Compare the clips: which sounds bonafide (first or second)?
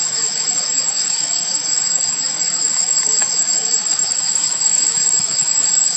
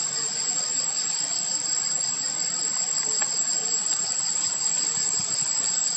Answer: second